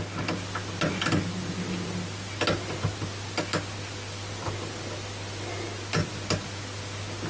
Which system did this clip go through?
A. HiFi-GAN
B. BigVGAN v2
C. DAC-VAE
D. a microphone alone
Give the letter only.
D